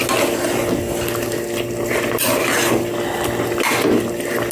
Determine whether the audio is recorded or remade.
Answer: recorded